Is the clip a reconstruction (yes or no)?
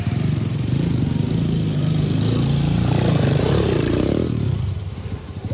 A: yes